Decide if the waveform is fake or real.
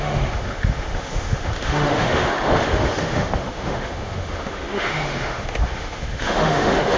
fake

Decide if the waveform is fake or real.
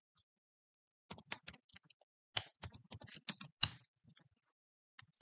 real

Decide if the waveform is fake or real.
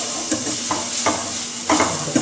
real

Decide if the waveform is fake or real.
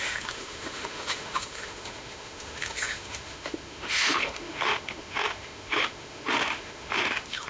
fake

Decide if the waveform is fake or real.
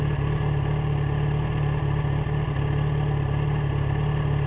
real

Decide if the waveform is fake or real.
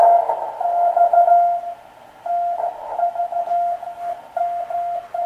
real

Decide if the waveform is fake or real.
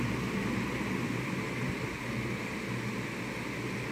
real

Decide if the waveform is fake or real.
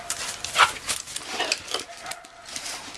real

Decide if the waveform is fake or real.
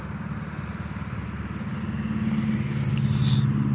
real